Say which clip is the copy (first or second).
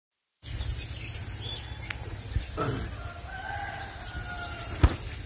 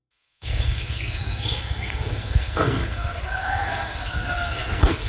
second